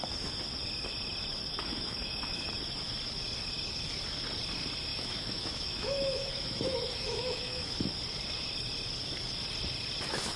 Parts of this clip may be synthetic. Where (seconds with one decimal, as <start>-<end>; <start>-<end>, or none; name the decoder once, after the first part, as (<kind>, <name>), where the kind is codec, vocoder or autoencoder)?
1.5-2.5 (autoencoder, DAC-VAE); 4.9-7.9